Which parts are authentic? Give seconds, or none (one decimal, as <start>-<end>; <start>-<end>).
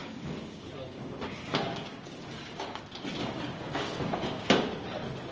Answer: 2.8-3.2; 4.5-5.3